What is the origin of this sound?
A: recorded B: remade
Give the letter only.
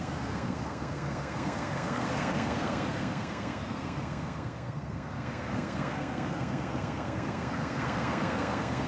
B